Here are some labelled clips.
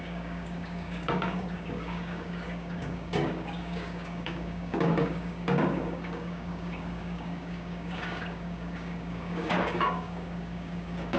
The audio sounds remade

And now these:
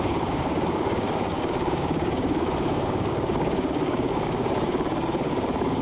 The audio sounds remade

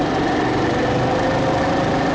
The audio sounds recorded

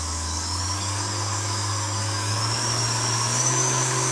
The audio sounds remade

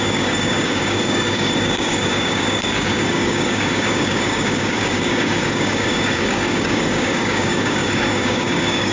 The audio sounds remade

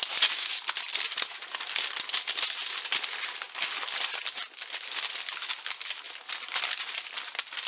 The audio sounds recorded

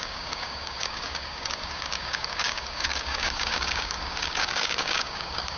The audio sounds remade